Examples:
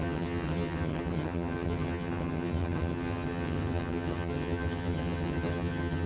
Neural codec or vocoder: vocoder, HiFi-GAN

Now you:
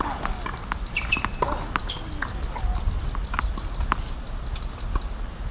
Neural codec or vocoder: none